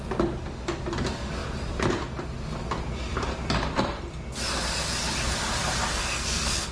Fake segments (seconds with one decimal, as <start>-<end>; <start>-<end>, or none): 5.9-6.7

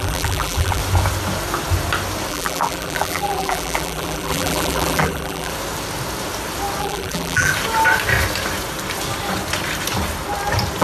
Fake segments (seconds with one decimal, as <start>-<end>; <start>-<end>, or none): 0.0-0.8; 2.3-5.5; 6.8-7.5

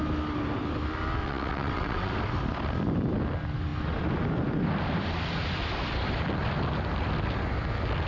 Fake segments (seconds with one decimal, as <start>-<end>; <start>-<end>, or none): 1.2-2.1

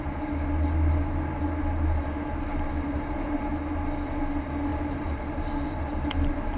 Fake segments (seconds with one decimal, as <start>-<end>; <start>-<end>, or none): 2.5-3.5; 4.7-6.6

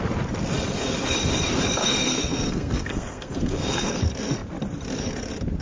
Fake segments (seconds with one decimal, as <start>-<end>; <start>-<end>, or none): 1.8-4.0

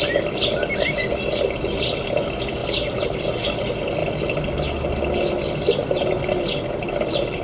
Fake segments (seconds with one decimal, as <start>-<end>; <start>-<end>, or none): 2.6-3.3; 4.0-4.5